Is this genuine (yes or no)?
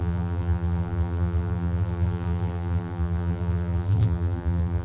no